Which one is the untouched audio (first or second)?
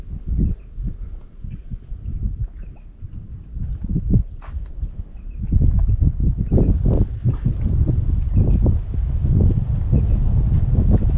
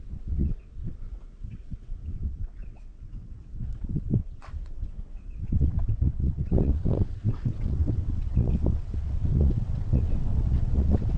first